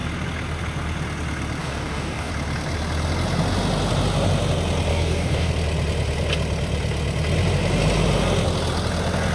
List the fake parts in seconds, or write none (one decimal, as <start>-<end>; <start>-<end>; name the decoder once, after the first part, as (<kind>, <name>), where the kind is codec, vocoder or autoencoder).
1.6-2.3 (codec, DAC); 4.9-5.5